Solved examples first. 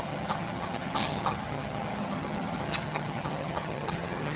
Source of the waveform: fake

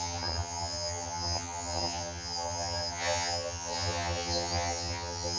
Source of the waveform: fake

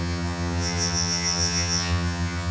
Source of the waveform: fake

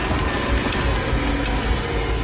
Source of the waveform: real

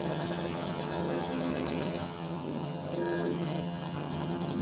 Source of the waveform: fake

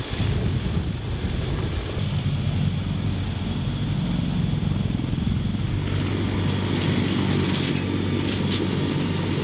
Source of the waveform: real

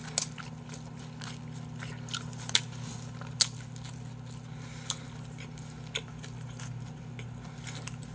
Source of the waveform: real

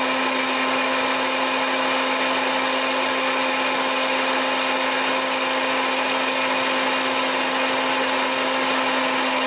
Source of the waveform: real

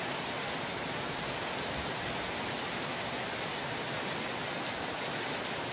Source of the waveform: real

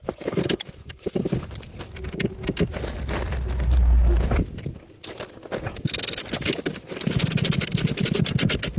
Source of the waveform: real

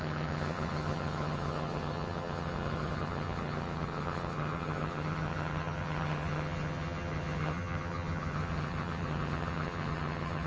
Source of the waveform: fake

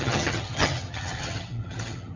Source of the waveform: fake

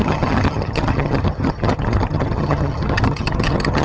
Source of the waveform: fake